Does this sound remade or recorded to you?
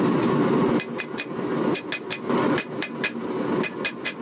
recorded